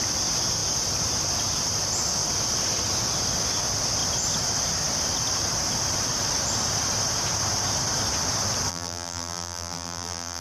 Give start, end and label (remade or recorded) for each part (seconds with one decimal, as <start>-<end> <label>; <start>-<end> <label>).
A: 0.0-8.7 recorded; 8.7-10.4 remade

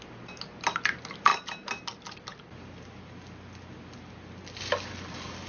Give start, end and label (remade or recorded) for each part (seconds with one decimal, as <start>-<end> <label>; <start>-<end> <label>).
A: 0.0-5.5 recorded

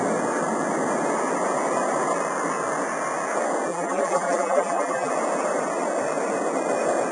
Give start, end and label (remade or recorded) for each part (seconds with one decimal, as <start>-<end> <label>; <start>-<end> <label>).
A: 0.0-3.7 recorded; 3.7-5.1 remade; 5.1-7.1 recorded

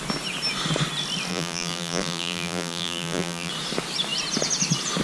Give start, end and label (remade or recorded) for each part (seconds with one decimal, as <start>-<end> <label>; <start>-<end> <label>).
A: 0.0-1.3 recorded; 1.3-3.5 remade; 3.5-5.0 recorded

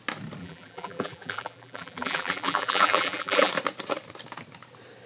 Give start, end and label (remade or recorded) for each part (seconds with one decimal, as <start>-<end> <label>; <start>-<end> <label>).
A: 0.0-0.4 recorded; 0.4-3.5 remade; 3.5-5.1 recorded

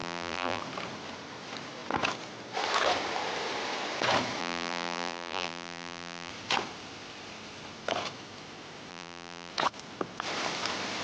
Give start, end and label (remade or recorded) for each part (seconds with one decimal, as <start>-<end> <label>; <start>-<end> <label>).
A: 0.0-0.6 remade; 0.6-4.4 recorded; 4.4-6.3 remade; 6.3-8.9 recorded; 8.9-9.5 remade; 9.5-11.0 recorded

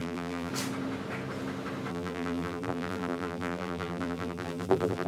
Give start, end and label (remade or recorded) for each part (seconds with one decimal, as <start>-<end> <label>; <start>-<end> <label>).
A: 0.0-0.5 remade; 0.5-1.9 recorded; 1.9-5.1 remade

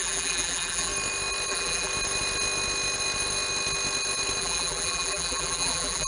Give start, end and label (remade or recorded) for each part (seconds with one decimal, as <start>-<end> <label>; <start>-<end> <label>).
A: 0.0-0.9 remade; 0.9-1.5 recorded; 1.5-1.9 remade; 1.9-4.4 recorded; 4.4-6.1 remade